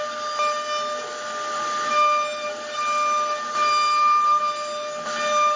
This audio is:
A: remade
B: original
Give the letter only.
B